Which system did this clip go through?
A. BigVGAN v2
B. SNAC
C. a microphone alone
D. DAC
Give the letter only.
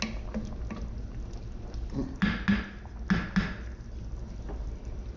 C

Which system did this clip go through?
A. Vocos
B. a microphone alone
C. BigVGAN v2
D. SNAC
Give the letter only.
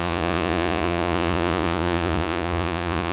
A